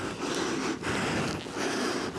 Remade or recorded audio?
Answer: recorded